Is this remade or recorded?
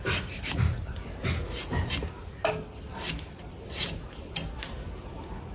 recorded